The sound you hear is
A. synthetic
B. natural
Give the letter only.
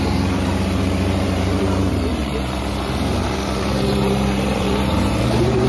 A